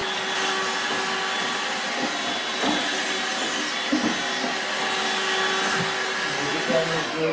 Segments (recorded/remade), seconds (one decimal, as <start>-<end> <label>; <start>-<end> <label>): 0.0-7.3 recorded